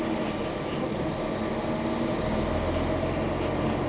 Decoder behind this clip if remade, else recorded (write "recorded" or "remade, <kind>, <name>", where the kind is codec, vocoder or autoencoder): recorded